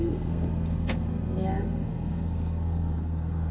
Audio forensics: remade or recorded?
remade